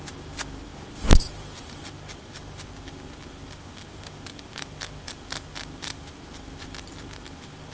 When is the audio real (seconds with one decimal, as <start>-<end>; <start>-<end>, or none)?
0.0-7.7